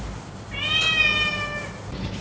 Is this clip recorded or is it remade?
recorded